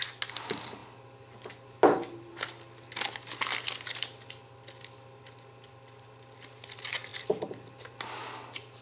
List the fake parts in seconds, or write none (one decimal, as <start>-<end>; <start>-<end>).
none